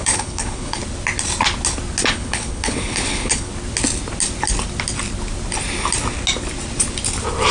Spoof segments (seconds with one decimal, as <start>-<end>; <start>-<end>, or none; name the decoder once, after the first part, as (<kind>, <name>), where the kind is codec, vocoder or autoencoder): 0.0-0.8 (codec, HILCodec); 2.1-3.5